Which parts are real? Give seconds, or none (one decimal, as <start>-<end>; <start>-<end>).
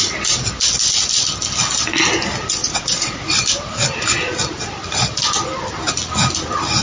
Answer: 0.0-2.6; 3.4-6.8